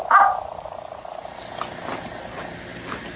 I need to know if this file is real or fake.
real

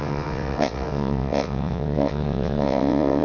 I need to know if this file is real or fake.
fake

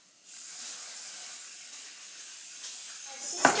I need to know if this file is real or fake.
real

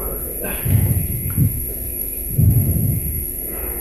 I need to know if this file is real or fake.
fake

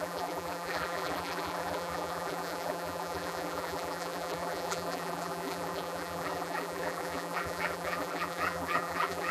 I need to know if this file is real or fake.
fake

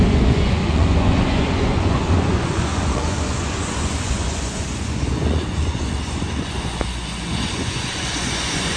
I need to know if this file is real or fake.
fake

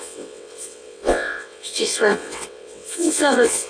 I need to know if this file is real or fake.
fake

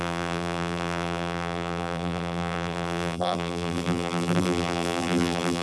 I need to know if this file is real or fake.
fake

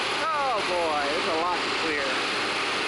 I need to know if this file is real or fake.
real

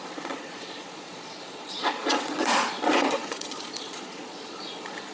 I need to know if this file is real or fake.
fake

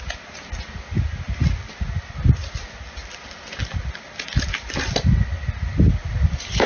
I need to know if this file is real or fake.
real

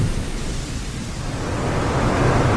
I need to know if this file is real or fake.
real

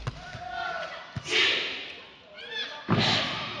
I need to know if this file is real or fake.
real